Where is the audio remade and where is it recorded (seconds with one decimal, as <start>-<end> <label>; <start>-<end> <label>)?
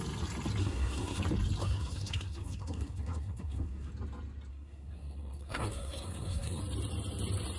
0.0-0.6 recorded; 0.6-1.2 remade; 1.2-1.6 recorded; 1.6-3.9 remade; 3.9-4.5 recorded; 4.5-6.6 remade; 6.6-7.6 recorded